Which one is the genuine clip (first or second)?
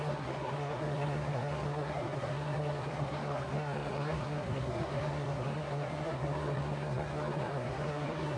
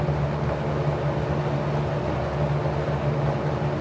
second